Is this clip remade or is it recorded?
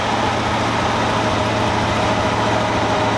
recorded